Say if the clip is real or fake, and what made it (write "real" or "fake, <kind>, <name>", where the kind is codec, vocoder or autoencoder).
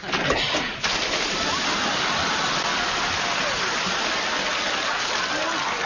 real